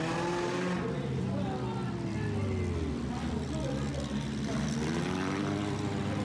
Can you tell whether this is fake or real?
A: real